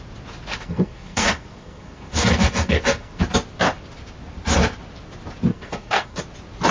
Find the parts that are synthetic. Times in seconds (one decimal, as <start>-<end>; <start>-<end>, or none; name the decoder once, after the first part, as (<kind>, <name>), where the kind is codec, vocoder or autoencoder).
0.5-3.2 (codec, SNAC); 5.5-6.2